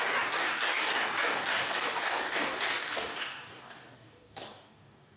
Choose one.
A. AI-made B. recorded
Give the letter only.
A